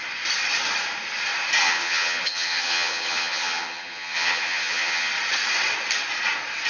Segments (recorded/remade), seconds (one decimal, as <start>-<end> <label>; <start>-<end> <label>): 0.0-1.6 recorded; 1.6-5.1 remade; 5.1-6.7 recorded